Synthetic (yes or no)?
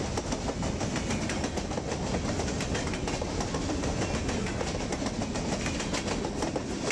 no